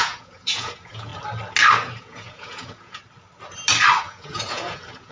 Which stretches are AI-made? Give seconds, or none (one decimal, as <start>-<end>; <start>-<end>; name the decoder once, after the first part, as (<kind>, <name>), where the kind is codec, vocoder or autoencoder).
0.0-1.1 (vocoder, Vocos); 2.0-3.0; 4.0-5.1